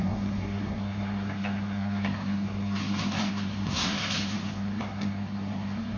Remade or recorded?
remade